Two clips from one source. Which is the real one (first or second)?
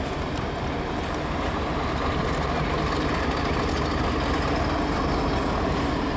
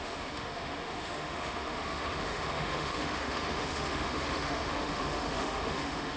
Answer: first